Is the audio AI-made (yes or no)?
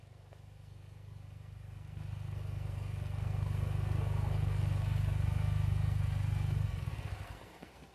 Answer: yes